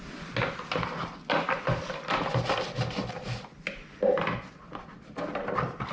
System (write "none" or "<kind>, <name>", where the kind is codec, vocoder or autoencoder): none